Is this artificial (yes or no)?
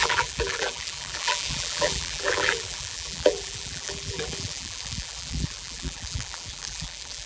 yes